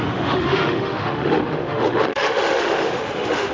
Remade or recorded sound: remade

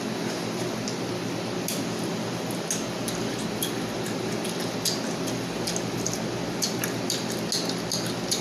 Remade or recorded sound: recorded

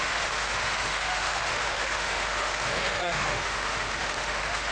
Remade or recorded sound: remade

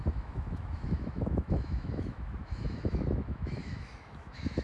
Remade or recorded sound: remade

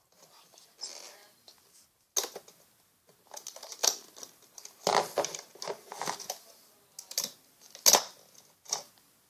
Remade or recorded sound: recorded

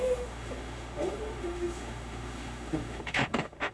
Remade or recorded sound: remade